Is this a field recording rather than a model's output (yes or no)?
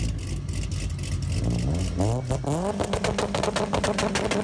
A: yes